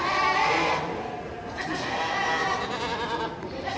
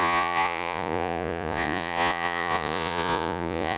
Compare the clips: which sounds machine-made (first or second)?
second